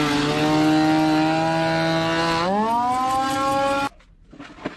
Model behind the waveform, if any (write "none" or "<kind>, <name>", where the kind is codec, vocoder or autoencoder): none